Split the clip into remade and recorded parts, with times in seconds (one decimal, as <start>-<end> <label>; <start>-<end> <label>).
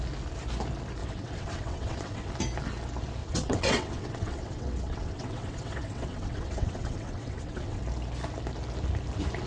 0.0-1.0 recorded; 1.0-2.3 remade; 2.3-3.2 recorded; 3.2-7.8 remade; 7.8-9.5 recorded